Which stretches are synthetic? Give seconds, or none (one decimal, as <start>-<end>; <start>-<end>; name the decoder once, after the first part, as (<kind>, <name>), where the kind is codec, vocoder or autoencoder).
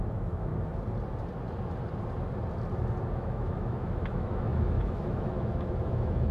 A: 0.0-0.5 (autoencoder, DAC-VAE); 3.1-6.3